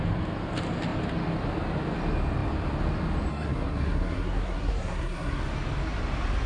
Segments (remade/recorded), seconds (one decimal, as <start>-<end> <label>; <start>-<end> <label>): 0.0-3.3 recorded; 3.3-5.4 remade; 5.4-6.5 recorded